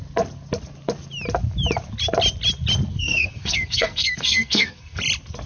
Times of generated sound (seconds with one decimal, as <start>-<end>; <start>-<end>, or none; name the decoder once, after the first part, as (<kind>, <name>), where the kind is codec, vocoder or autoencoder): 2.9-5.0 (codec, SNAC)